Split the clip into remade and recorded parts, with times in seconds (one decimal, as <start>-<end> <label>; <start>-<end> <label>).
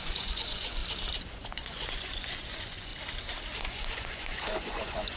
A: 0.0-0.8 remade; 0.8-1.3 recorded; 1.3-2.9 remade; 2.9-3.6 recorded; 3.6-5.2 remade